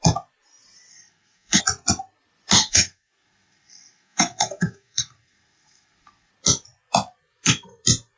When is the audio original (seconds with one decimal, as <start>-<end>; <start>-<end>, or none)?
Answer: 0.0-0.9; 1.6-2.6; 6.3-8.2